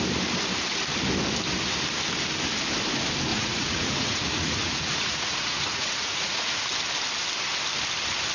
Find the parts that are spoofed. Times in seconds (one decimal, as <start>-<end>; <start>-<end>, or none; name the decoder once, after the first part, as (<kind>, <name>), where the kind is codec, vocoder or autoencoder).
3.3-6.6 (vocoder, Vocos)